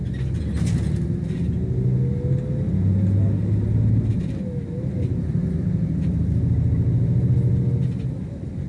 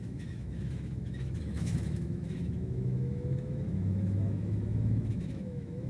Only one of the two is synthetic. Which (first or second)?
second